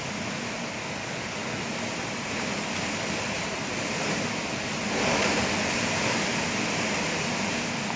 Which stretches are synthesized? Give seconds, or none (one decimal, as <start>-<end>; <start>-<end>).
none